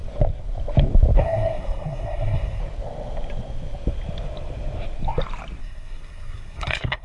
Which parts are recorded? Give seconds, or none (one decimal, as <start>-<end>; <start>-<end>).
0.0-1.2; 2.6-5.6

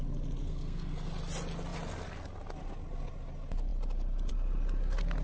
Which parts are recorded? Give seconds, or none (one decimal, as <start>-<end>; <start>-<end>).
0.0-0.4; 1.1-5.2

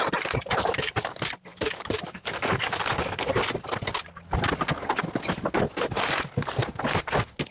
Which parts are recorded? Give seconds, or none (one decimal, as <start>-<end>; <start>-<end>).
0.0-1.5; 3.3-7.5